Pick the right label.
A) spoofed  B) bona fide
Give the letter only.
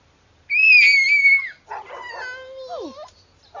B